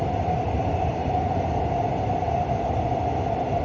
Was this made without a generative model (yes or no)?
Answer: yes